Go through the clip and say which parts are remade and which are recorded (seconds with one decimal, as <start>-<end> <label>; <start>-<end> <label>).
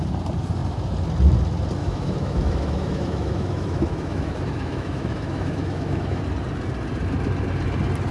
0.0-1.8 recorded; 1.8-6.2 remade; 6.2-8.1 recorded